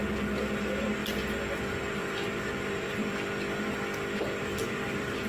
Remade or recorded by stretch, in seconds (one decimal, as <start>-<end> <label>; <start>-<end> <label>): 0.0-1.0 remade; 1.0-1.7 recorded; 1.7-3.0 remade; 3.0-4.4 recorded; 4.4-5.3 remade